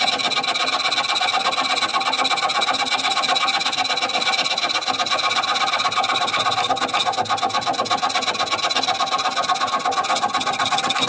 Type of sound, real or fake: real